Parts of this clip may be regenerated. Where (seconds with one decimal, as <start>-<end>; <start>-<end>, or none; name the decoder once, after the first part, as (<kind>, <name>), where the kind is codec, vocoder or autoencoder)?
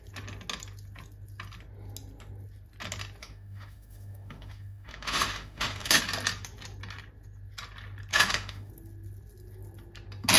3.2-6.0 (autoencoder, DAC-VAE); 8.1-8.7